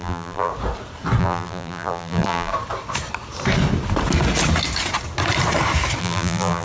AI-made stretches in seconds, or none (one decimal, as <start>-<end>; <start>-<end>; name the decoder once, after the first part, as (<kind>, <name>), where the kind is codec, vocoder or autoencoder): 0.0-0.5 (vocoder, BigVGAN v2); 1.2-2.5; 6.0-6.6